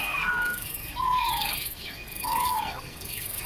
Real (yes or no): no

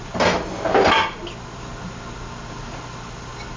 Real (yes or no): yes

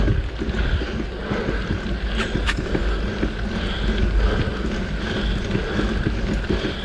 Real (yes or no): yes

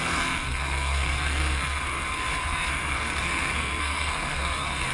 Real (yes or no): no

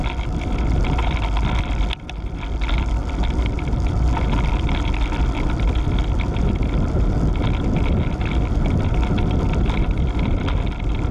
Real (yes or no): yes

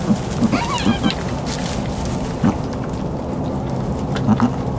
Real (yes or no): yes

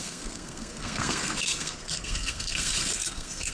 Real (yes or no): no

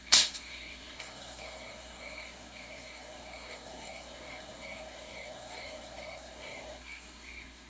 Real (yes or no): no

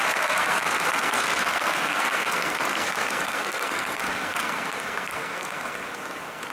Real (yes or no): no